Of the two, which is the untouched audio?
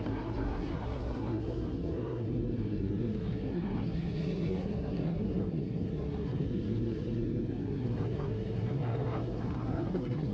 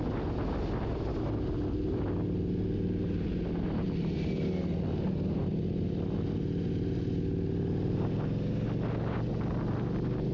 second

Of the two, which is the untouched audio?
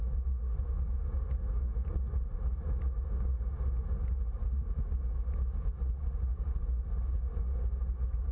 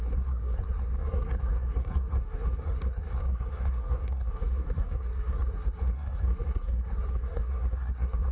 first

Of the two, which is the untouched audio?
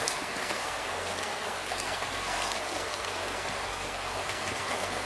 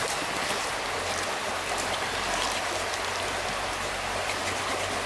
second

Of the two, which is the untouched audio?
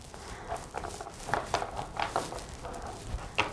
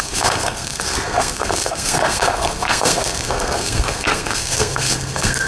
first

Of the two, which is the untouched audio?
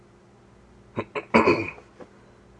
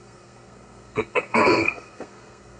first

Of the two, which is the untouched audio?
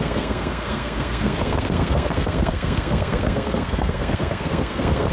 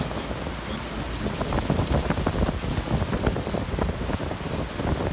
second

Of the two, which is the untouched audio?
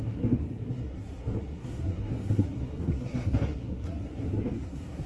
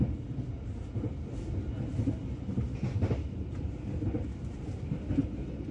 second